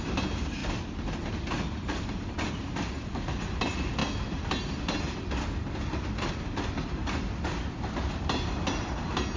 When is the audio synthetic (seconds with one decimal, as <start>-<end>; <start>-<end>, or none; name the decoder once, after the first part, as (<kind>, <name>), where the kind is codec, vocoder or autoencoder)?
none